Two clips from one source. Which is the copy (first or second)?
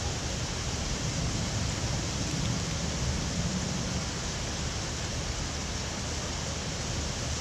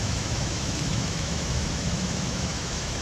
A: second